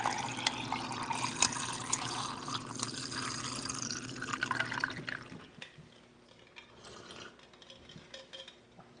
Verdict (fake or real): real